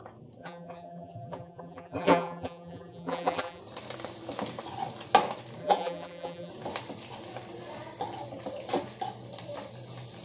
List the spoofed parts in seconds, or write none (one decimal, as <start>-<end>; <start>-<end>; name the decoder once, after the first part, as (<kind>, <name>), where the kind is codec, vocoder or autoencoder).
0.4-3.6 (vocoder, BigVGAN v2); 5.6-6.5